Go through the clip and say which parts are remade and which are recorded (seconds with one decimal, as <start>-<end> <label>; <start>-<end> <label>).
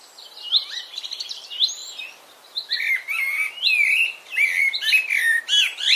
0.0-6.0 recorded